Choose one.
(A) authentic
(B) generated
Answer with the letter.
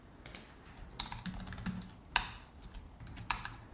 A